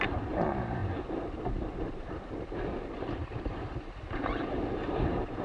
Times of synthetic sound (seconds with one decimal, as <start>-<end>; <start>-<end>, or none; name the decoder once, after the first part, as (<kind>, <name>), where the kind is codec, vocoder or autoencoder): none